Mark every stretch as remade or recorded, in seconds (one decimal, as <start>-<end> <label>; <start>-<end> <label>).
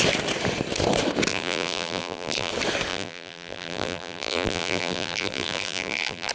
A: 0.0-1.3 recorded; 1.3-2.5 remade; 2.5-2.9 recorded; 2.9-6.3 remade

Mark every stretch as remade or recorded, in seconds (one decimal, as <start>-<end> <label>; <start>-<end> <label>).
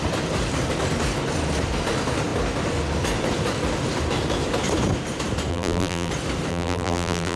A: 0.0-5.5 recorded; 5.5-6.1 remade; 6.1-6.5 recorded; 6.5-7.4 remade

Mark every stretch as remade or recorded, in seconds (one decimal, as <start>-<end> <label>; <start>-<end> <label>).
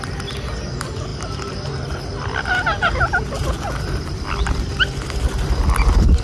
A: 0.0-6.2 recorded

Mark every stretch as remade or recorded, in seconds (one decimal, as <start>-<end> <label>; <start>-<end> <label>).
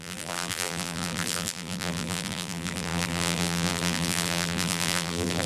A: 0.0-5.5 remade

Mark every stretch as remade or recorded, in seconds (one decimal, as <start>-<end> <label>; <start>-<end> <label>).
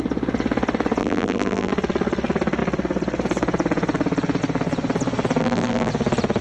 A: 0.0-1.0 recorded; 1.0-1.7 remade; 1.7-5.4 recorded; 5.4-5.9 remade; 5.9-6.4 recorded